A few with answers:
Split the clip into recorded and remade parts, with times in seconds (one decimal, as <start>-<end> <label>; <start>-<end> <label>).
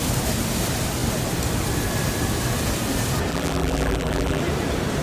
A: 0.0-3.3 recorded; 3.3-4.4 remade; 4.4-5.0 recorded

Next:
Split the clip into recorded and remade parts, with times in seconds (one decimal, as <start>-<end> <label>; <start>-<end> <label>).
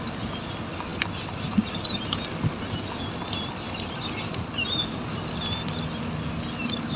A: 0.0-7.0 recorded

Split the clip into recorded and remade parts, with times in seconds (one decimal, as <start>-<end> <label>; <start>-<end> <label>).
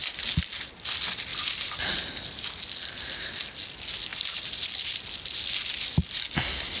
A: 0.0-4.1 recorded; 4.1-5.0 remade; 5.0-6.8 recorded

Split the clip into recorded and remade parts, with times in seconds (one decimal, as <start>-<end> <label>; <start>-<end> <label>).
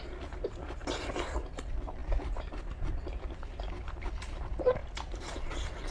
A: 0.0-5.9 remade